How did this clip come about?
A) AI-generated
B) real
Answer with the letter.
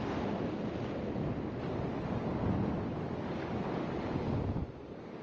B